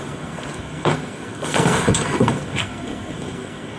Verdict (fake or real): fake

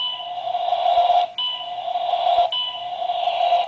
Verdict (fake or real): real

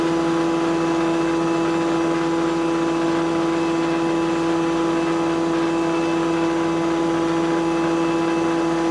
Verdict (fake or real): real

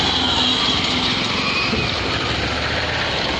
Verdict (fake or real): real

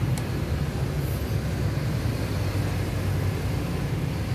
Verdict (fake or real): real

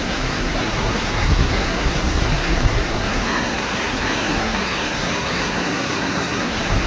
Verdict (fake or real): fake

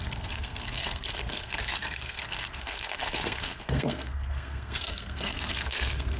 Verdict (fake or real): fake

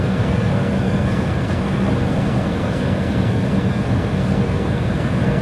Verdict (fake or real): fake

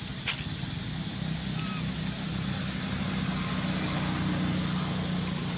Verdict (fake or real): real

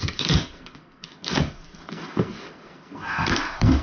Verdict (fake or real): fake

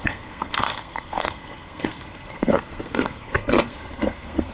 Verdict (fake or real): fake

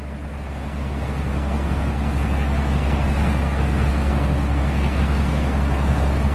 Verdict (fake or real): fake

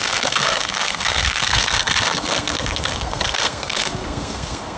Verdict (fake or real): fake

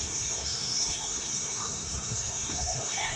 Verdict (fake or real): fake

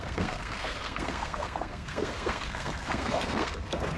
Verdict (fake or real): fake